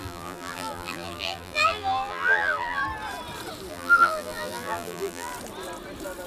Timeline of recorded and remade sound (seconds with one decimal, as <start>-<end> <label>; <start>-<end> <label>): 0.0-2.8 remade; 2.8-3.7 recorded; 3.7-5.3 remade; 5.3-6.3 recorded